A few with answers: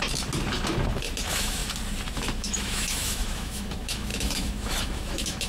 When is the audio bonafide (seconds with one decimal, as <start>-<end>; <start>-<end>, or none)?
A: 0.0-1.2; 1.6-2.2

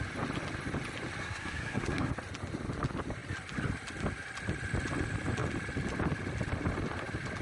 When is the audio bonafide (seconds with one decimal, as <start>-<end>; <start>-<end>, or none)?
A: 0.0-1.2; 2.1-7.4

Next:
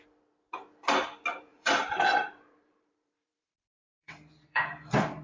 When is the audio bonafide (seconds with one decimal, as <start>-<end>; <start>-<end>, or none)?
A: 0.0-1.5; 4.6-5.2